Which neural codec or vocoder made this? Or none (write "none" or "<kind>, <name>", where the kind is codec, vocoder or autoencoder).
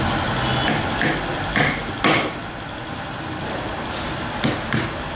none